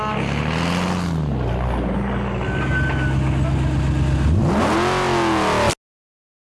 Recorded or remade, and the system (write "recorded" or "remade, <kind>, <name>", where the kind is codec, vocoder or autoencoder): recorded